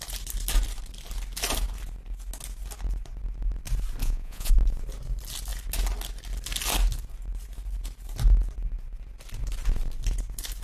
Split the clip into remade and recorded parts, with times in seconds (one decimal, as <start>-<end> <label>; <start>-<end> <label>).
0.0-4.0 recorded; 4.0-4.5 remade; 4.5-10.6 recorded